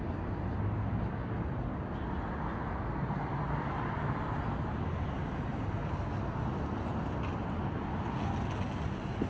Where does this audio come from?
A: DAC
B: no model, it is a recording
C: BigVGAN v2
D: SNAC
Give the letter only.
B